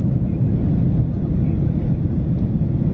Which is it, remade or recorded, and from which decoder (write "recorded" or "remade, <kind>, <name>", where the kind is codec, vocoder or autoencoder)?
recorded